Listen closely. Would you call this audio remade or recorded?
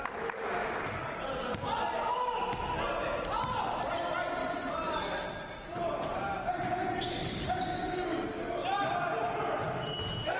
recorded